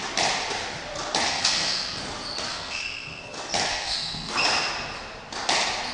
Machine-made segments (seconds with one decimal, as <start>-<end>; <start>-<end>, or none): 1.3-2.0; 2.5-3.3; 3.7-4.3